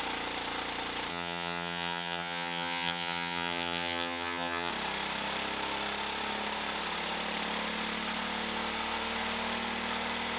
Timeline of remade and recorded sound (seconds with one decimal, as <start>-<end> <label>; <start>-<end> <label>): 0.0-1.1 recorded; 1.1-4.7 remade; 4.7-10.4 recorded